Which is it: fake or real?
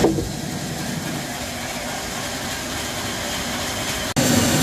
real